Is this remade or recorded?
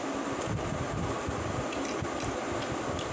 recorded